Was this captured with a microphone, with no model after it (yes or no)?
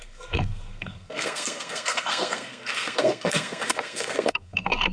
no